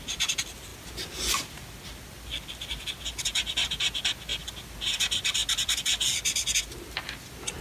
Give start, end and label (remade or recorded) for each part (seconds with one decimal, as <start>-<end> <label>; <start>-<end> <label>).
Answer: 0.0-7.6 recorded

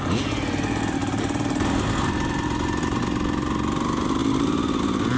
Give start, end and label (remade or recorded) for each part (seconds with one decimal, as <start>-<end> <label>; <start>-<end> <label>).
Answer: 0.0-5.2 recorded

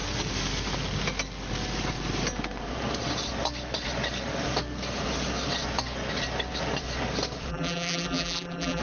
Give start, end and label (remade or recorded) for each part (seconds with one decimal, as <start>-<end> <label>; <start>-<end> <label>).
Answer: 0.0-7.5 recorded; 7.5-8.8 remade

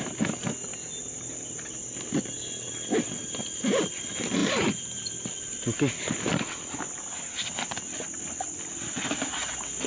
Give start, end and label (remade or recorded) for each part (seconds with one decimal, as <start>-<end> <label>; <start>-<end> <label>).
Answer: 0.0-9.9 recorded

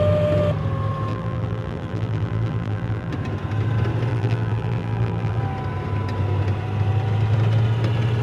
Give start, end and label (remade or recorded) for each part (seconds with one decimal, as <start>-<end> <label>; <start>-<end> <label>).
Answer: 0.0-1.1 recorded; 1.1-3.1 remade; 3.1-4.1 recorded; 4.1-5.4 remade; 5.4-8.2 recorded

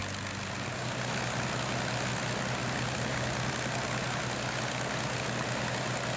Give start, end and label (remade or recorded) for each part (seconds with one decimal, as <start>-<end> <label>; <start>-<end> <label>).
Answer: 0.0-6.2 recorded

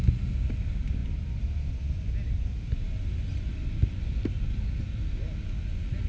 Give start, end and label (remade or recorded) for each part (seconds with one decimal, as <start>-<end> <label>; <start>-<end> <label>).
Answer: 0.0-6.1 recorded

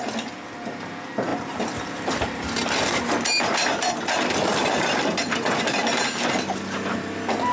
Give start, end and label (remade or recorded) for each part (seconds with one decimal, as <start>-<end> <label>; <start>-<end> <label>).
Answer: 0.0-7.5 recorded